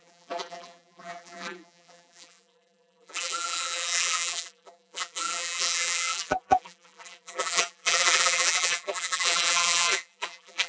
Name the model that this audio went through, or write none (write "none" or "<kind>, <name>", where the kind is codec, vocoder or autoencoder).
vocoder, BigVGAN v2